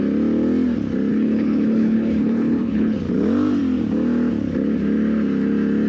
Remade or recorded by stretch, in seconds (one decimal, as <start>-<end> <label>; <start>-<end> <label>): 0.0-1.1 recorded; 1.1-3.0 remade; 3.0-5.9 recorded

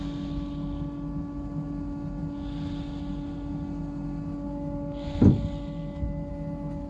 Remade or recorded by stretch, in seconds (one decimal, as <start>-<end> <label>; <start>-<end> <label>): 0.0-6.9 recorded

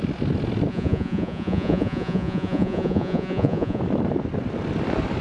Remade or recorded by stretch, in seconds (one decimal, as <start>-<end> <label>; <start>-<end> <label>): 0.0-0.7 recorded; 0.7-3.8 remade; 3.8-5.2 recorded

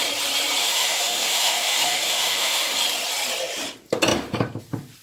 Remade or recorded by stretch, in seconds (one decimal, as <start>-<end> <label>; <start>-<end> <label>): 0.0-0.6 recorded; 0.6-2.7 remade; 2.7-5.0 recorded